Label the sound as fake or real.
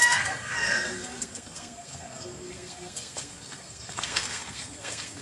fake